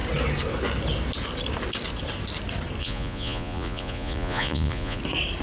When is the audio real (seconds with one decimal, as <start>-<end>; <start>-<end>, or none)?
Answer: 0.0-2.8; 5.0-5.4